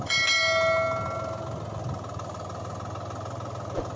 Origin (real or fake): real